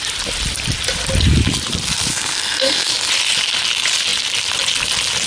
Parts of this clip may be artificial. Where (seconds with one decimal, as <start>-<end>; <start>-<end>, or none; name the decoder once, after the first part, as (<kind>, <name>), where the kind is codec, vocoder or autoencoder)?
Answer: 2.1-2.9 (codec, SNAC)